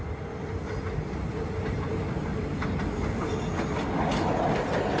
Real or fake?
real